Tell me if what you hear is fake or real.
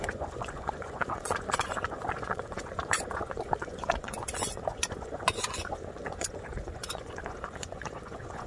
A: fake